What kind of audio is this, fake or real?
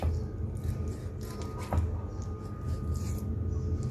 real